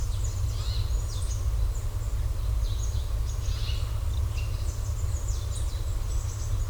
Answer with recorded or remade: recorded